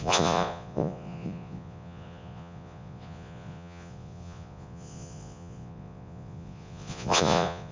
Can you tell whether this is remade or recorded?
remade